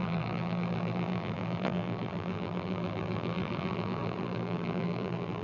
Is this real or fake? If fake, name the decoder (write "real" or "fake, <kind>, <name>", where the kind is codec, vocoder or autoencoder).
fake, vocoder, BigVGAN v2